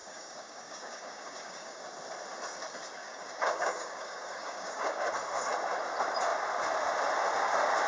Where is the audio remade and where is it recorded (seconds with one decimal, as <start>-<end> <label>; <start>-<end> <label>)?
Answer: 0.0-1.8 remade; 1.8-3.0 recorded; 3.0-5.1 remade; 5.1-7.9 recorded